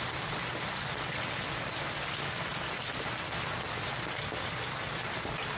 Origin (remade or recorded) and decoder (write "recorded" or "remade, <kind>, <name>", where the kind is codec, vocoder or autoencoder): recorded